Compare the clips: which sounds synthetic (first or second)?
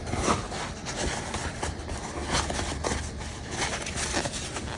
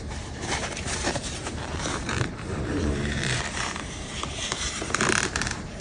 second